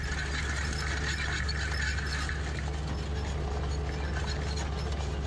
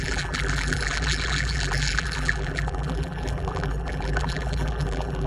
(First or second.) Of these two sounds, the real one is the first